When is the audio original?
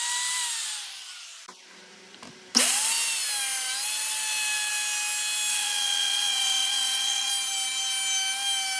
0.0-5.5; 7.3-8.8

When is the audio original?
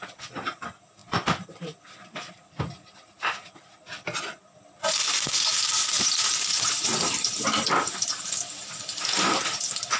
0.0-6.5; 7.0-10.0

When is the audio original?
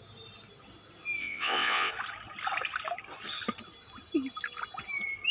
0.0-1.2; 1.9-5.3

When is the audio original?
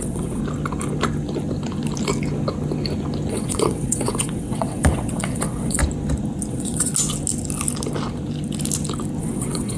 0.4-3.3; 5.8-6.5; 6.9-9.2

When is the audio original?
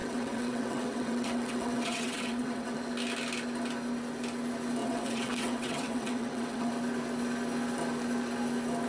2.8-4.8; 6.7-8.9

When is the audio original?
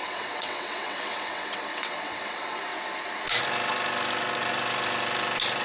2.6-5.6